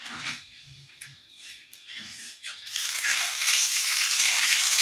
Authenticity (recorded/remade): remade